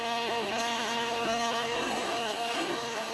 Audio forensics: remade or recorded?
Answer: remade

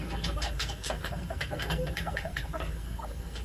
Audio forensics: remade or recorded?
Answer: remade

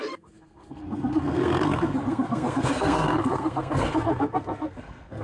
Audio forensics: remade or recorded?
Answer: remade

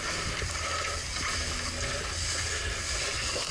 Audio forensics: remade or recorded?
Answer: recorded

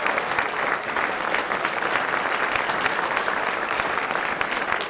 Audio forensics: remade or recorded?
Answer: recorded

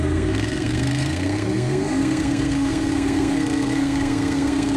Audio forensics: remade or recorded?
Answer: remade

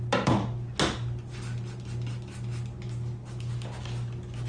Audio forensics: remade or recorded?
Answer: recorded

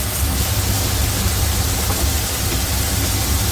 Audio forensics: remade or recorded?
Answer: recorded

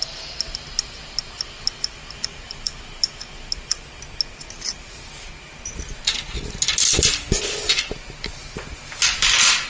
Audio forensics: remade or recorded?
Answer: recorded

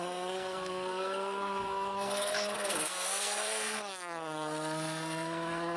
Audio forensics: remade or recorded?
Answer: remade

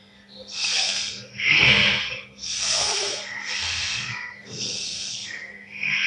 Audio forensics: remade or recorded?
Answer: remade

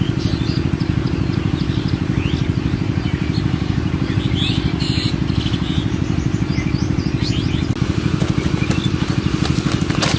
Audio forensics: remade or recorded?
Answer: recorded